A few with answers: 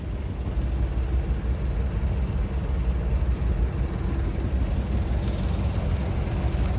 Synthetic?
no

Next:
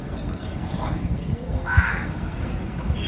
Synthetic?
yes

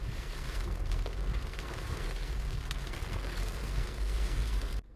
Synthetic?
yes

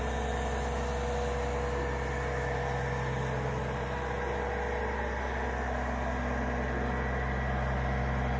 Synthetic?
no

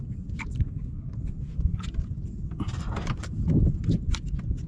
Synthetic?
no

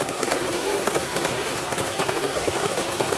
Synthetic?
yes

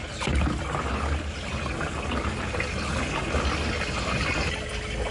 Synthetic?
no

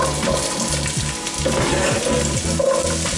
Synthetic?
no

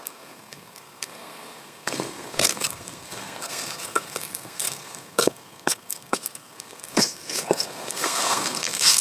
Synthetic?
yes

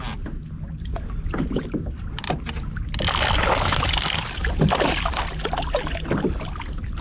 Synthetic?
no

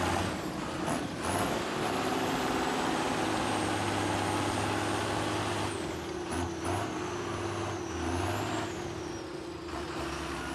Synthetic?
no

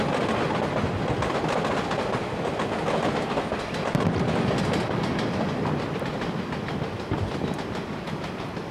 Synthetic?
no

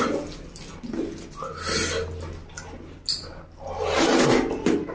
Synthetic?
no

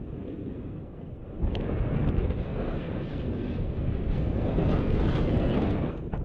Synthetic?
yes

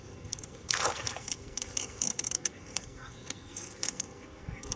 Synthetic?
yes